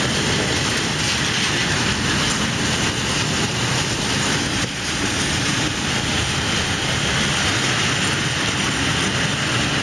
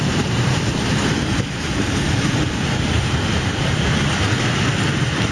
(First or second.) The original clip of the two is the first